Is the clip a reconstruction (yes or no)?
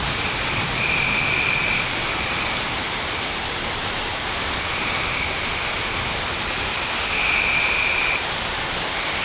yes